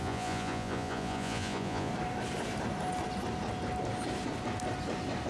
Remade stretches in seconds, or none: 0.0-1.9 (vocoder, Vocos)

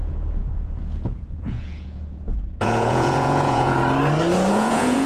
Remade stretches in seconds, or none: 0.0-3.8 (vocoder, Vocos); 4.5-5.1

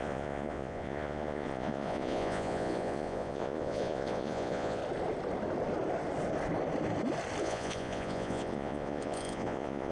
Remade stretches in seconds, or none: 0.0-4.8 (vocoder, Vocos); 7.4-9.9

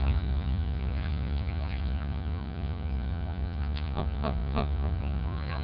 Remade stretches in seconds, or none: 0.0-5.6 (vocoder, Vocos)